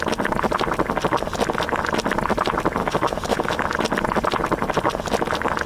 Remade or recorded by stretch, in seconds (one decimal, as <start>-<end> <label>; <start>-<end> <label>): 0.0-2.8 recorded; 2.8-3.6 remade; 3.6-5.7 recorded